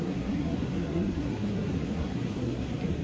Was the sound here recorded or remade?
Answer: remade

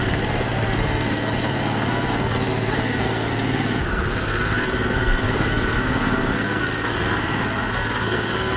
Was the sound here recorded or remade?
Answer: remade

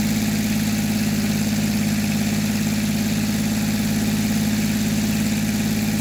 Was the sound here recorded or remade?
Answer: recorded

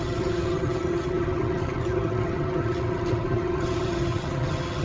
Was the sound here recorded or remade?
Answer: remade